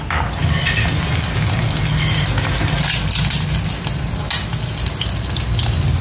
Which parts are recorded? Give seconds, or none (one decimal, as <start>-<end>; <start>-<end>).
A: 0.0-6.0

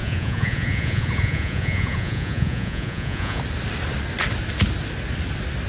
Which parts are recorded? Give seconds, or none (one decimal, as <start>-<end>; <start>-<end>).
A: 3.4-5.7

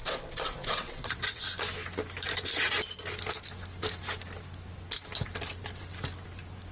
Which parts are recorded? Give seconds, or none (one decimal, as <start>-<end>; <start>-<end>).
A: 1.4-6.7

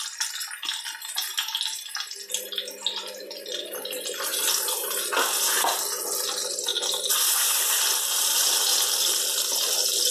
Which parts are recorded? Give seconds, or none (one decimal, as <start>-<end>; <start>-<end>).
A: 0.0-10.1

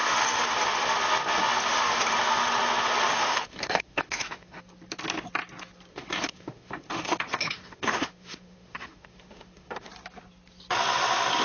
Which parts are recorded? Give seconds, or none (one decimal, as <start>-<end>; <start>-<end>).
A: 0.0-3.1; 4.6-5.9; 9.9-11.4